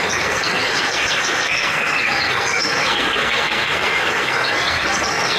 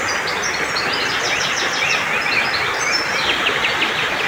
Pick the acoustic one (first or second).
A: second